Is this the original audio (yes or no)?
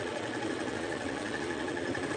no